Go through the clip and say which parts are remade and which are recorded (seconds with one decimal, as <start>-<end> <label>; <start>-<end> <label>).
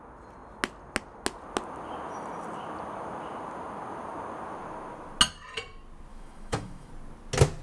0.0-6.1 recorded; 6.1-6.9 remade; 6.9-7.6 recorded